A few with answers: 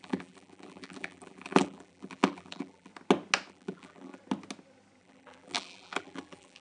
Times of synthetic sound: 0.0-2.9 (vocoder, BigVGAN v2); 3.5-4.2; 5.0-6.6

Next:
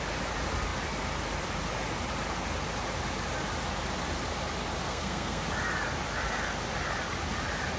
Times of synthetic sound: 4.9-5.4 (codec, SNAC)

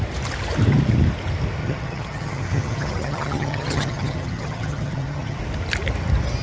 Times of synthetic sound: 1.6-5.4 (vocoder, HiFi-GAN)

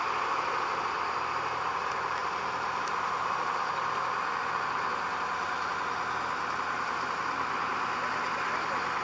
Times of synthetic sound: none

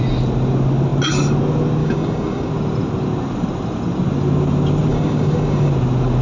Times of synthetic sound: 1.8-2.5 (codec, DAC); 4.9-5.7